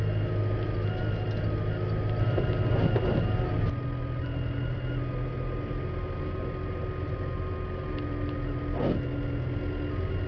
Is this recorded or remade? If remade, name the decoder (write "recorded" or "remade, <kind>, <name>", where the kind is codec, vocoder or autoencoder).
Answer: recorded